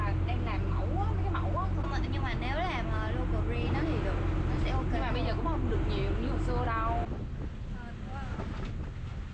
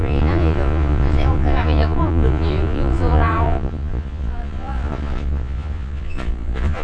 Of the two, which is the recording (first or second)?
first